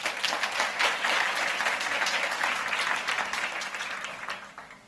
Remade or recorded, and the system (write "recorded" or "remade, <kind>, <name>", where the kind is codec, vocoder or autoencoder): recorded